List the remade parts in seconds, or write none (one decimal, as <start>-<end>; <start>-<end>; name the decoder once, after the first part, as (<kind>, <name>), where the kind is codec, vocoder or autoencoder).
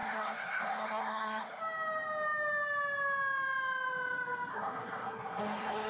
0.0-1.6 (codec, SNAC); 4.5-5.9